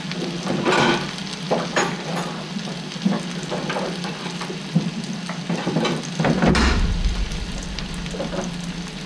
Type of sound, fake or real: real